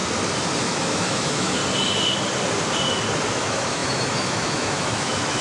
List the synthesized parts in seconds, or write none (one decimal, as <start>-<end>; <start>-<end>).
0.6-1.6; 3.3-5.4